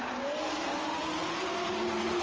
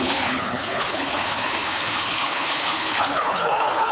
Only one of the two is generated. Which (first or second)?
second